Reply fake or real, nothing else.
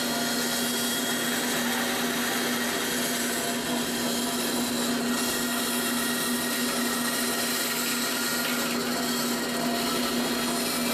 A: real